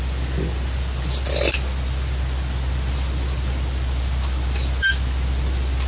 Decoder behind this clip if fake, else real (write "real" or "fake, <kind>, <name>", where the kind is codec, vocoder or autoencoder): real